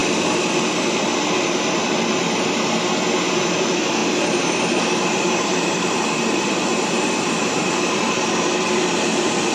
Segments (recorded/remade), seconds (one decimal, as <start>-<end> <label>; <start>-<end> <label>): 0.0-4.0 recorded; 4.0-8.1 remade; 8.1-9.5 recorded